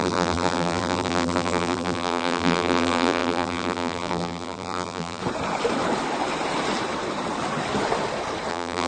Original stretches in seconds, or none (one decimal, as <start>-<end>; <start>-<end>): 5.2-8.5